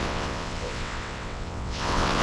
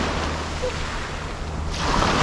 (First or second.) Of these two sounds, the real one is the second